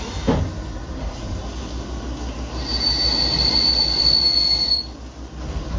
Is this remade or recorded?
recorded